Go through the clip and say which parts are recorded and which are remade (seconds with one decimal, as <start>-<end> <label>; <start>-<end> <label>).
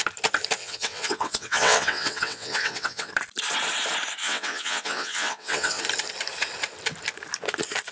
0.0-0.6 recorded; 0.6-3.1 remade; 3.1-4.2 recorded; 4.2-5.8 remade; 5.8-7.9 recorded